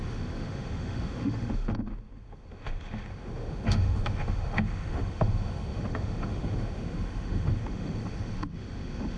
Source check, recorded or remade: remade